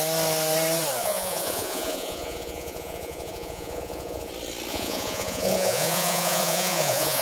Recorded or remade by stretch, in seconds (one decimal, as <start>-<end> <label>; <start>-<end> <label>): 0.0-1.0 recorded; 1.0-4.3 remade; 4.3-4.7 recorded; 4.7-7.2 remade